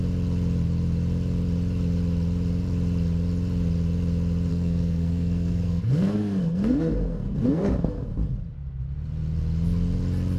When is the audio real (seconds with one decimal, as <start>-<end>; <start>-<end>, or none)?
0.0-4.5; 8.1-10.4